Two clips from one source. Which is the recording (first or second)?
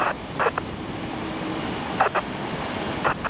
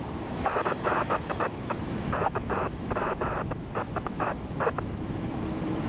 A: first